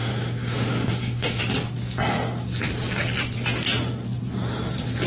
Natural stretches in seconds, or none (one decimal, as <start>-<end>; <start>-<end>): 1.4-5.1